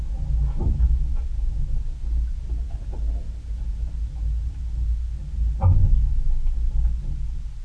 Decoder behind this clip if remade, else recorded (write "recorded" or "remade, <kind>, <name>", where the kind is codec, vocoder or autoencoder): recorded